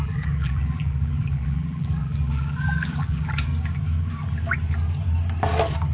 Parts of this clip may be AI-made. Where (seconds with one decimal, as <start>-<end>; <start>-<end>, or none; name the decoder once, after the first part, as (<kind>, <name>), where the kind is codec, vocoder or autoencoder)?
0.0-3.5 (vocoder, BigVGAN v2)